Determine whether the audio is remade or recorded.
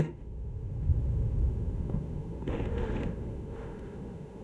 remade